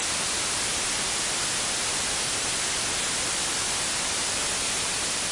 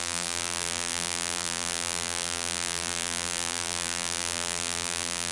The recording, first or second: first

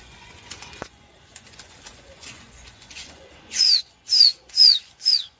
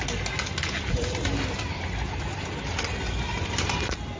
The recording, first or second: second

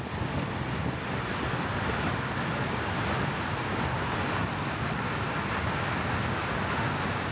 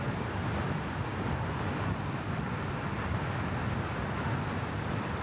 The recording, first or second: first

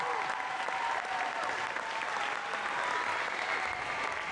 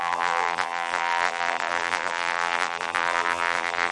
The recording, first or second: first